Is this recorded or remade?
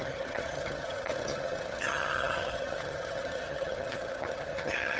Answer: remade